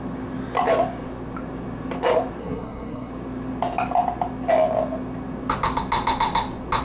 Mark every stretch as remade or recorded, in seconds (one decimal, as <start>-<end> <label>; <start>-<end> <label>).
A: 0.0-2.4 recorded; 2.4-3.1 remade; 3.1-6.8 recorded